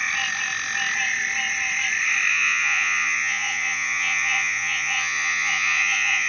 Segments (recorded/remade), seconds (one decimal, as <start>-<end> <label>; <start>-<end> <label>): 0.0-2.3 recorded; 2.3-6.3 remade